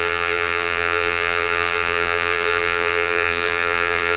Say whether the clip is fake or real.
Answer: fake